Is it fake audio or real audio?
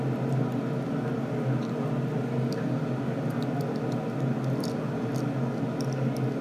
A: real